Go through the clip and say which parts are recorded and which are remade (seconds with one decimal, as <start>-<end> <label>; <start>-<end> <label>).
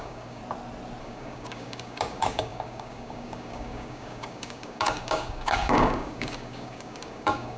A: 0.0-0.4 remade; 0.4-1.0 recorded; 1.0-7.6 remade